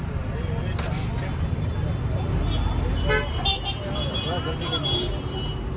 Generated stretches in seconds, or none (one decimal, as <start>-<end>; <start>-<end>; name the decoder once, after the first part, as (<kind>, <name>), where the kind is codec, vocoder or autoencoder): none